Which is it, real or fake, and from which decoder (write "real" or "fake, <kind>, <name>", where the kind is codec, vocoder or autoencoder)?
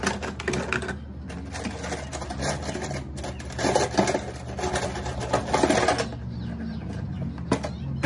real